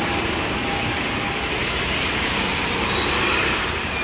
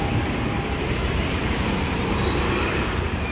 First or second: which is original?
first